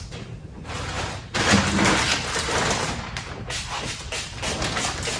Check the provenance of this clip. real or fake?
real